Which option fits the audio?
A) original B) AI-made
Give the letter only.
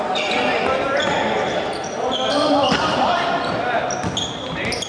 A